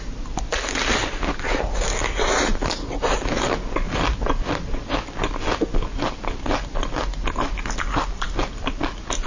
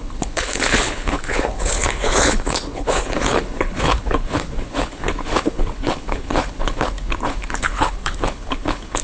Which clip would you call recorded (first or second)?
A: first